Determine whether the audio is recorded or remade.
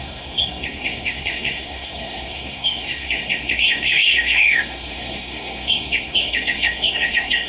remade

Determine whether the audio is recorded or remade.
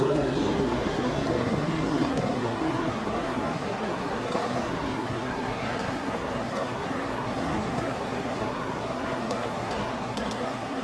remade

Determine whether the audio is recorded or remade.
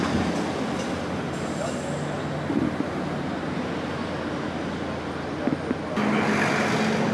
recorded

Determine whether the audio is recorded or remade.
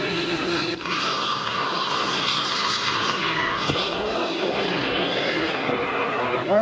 remade